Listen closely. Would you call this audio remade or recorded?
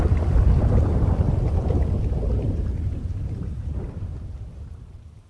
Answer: remade